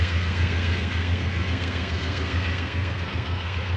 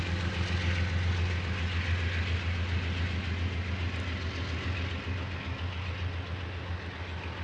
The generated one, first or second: first